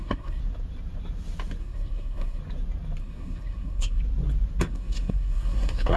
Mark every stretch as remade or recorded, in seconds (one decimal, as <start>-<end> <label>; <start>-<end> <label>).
0.0-0.4 remade; 0.4-1.6 recorded; 1.6-2.4 remade; 2.4-3.0 recorded; 3.0-4.0 remade; 4.0-4.6 recorded; 4.6-6.0 remade